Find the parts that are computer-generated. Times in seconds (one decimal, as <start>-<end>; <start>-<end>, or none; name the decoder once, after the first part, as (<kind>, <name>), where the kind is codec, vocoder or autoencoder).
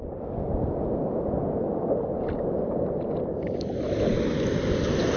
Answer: none